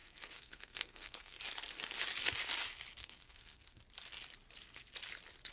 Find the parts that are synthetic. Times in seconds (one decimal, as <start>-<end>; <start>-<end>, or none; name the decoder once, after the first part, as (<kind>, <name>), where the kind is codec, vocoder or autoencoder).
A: 0.0-1.4 (codec, SNAC); 3.0-3.8